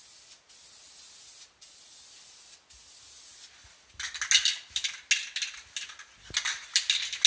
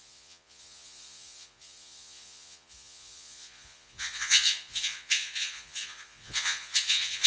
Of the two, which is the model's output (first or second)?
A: second